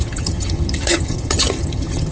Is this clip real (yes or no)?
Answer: no